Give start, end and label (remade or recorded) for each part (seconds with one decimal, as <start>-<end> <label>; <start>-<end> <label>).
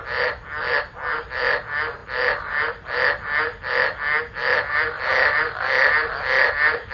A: 0.0-6.9 remade